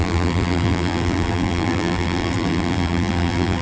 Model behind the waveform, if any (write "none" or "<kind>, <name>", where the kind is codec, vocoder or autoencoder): vocoder, BigVGAN v2